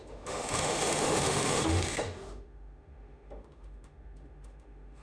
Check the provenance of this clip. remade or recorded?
remade